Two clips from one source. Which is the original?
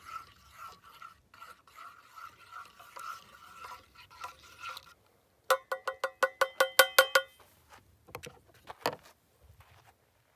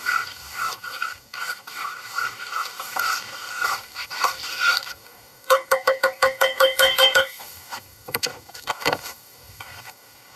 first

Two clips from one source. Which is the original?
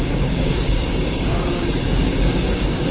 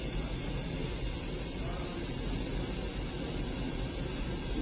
second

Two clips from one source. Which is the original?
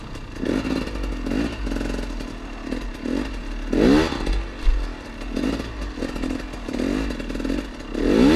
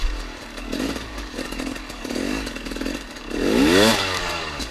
first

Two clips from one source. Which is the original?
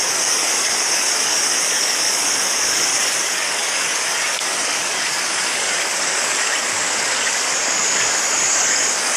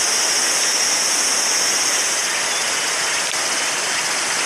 second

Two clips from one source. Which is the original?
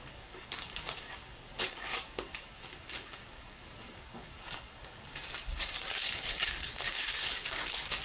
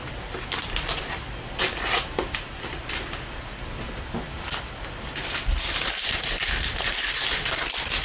second